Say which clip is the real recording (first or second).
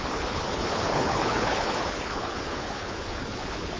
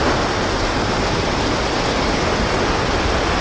second